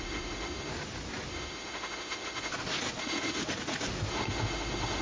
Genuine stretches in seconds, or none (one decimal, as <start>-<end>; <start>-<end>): 0.7-1.3; 2.5-3.0; 3.4-4.1